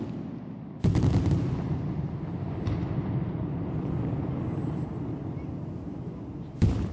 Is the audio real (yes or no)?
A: yes